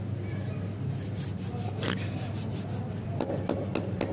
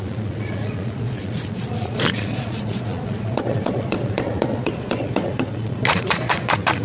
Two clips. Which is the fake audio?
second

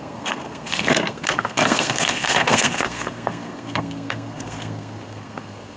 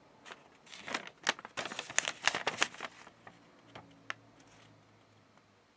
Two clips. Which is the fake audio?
first